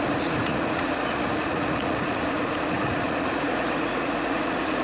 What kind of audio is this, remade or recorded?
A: remade